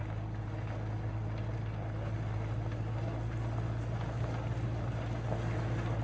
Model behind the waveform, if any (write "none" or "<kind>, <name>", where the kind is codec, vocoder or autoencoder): none